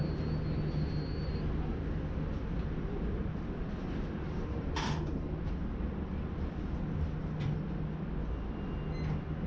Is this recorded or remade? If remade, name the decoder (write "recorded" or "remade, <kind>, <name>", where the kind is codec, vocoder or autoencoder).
recorded